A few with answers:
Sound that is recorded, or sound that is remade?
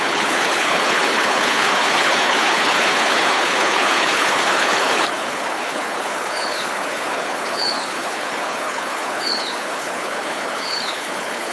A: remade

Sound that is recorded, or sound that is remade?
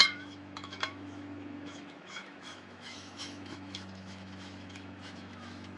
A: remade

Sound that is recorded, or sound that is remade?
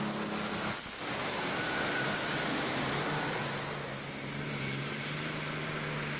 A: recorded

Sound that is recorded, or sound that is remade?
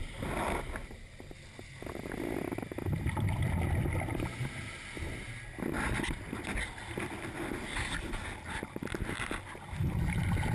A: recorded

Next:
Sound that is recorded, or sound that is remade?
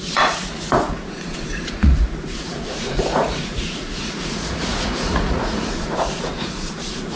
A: remade